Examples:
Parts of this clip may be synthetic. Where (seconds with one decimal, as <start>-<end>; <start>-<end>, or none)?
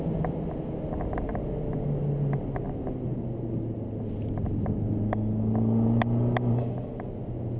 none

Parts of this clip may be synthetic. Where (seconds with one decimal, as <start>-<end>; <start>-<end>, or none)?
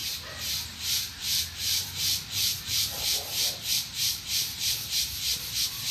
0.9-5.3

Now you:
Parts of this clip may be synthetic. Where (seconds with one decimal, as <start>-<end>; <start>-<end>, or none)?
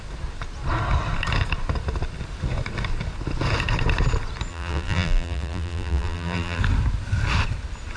4.5-6.6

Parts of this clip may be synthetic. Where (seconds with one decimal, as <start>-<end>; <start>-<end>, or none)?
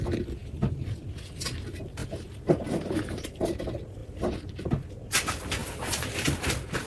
0.4-1.0; 2.0-3.4; 4.0-4.7; 5.6-6.5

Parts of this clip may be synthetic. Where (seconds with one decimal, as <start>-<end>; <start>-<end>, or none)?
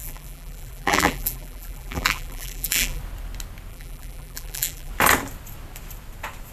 0.0-3.0; 3.7-4.9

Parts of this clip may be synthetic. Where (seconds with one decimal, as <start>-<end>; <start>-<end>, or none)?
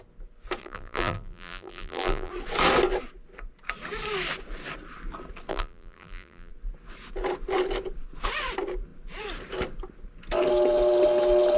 0.6-2.3; 5.5-6.5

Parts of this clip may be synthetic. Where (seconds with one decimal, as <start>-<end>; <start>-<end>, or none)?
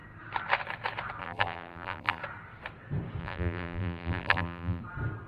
1.2-2.2; 3.2-4.8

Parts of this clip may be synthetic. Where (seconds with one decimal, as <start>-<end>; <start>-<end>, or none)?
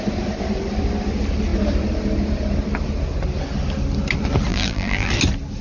4.5-5.1